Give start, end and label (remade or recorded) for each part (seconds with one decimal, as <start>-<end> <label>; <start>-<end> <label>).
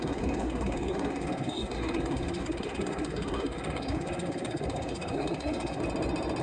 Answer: 0.0-5.8 remade; 5.8-6.4 recorded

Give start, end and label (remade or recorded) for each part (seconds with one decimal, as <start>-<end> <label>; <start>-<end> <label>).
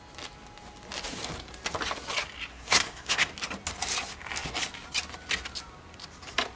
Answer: 0.0-2.5 recorded; 2.5-3.3 remade; 3.3-6.6 recorded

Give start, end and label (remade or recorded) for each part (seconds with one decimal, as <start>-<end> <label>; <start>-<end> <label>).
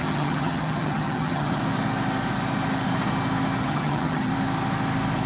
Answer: 0.0-1.6 remade; 1.6-3.6 recorded; 3.6-4.3 remade; 4.3-5.3 recorded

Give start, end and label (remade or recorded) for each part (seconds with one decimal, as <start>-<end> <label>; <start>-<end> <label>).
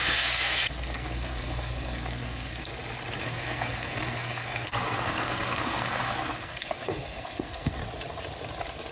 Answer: 0.0-2.7 remade; 2.7-3.2 recorded; 3.2-7.8 remade; 7.8-8.9 recorded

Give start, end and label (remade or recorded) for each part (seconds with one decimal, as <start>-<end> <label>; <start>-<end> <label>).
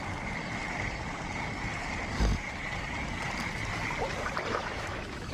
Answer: 0.0-4.5 recorded; 4.5-5.3 remade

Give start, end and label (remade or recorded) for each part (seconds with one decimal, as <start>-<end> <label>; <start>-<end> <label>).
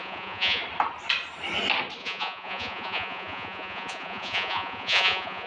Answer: 0.0-0.6 remade; 0.6-2.0 recorded; 2.0-5.5 remade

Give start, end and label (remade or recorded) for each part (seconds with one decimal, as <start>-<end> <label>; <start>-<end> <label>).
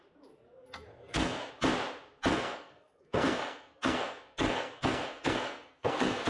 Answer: 0.0-0.9 recorded; 0.9-1.5 remade; 1.5-2.3 recorded; 2.3-6.3 remade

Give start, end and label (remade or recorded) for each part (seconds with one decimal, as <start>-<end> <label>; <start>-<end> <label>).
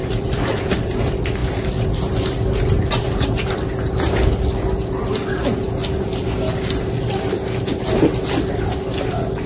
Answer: 0.0-0.6 remade; 0.6-1.4 recorded; 1.4-2.2 remade; 2.2-9.5 recorded